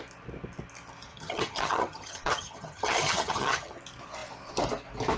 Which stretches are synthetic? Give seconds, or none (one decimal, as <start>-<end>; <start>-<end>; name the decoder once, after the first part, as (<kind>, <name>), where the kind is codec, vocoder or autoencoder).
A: 1.1-3.8 (vocoder, HiFi-GAN)